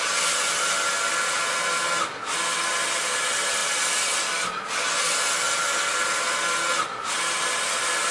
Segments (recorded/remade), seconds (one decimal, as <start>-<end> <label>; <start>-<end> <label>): 0.0-8.1 recorded